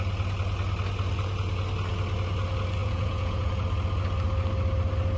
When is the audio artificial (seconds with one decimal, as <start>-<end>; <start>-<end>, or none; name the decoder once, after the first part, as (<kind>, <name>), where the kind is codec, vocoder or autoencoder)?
2.8-3.5 (vocoder, Vocos)